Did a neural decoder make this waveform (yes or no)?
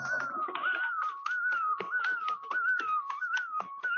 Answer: no